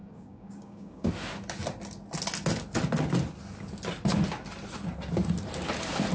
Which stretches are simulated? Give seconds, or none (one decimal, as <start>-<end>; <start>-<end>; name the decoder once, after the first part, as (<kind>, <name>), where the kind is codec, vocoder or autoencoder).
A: 0.0-1.1 (codec, DAC)